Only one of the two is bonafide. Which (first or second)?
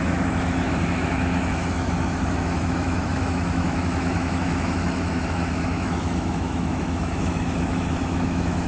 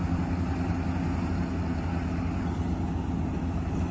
second